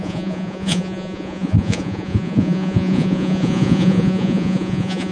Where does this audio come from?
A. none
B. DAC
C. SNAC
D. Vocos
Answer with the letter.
D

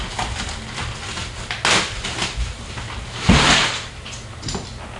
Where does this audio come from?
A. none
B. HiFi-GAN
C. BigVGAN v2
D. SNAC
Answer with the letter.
A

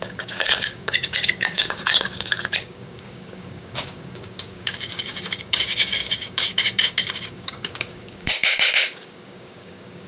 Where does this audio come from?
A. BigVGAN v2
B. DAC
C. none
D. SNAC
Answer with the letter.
B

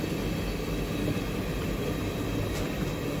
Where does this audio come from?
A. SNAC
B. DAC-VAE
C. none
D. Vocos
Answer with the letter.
C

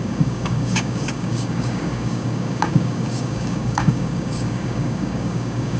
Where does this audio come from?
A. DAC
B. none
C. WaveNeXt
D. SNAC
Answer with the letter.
A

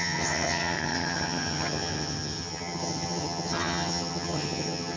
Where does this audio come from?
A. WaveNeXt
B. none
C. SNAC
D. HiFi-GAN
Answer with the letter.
D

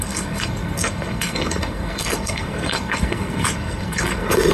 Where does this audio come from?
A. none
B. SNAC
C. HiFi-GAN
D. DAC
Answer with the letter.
B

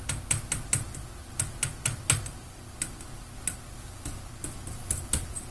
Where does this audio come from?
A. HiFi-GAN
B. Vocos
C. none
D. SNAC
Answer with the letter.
C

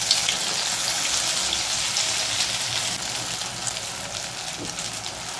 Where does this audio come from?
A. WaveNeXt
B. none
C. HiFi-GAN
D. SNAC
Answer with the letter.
B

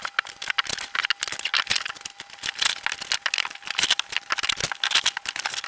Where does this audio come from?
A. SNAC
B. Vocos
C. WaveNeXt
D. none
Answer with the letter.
D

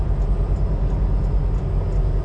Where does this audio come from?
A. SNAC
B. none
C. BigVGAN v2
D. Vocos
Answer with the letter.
B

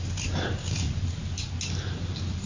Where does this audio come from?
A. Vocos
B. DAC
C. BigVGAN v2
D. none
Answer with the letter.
D